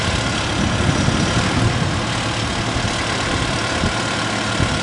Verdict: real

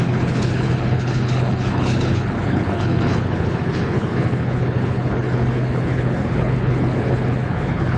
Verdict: fake